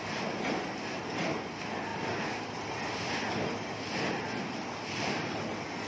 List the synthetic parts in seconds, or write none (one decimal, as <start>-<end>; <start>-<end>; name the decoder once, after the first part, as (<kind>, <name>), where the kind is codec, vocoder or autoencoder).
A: none